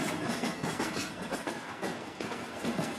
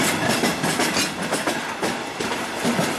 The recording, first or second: second